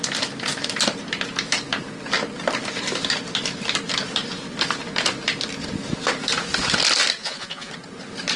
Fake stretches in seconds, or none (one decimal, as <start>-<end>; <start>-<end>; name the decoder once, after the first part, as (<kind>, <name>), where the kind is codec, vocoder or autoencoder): 7.2-7.7 (vocoder, Vocos)